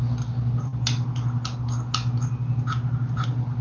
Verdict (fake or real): real